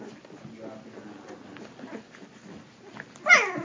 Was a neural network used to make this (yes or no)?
no